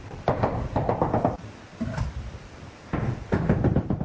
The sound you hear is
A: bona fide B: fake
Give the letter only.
A